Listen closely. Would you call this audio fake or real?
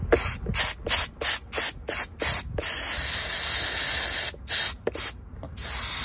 real